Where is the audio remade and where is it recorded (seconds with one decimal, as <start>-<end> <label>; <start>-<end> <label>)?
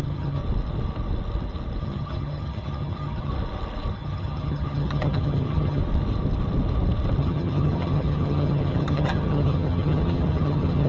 0.0-0.4 remade; 0.4-1.8 recorded; 1.8-3.3 remade; 3.3-3.9 recorded; 3.9-5.8 remade; 5.8-7.2 recorded; 7.2-10.9 remade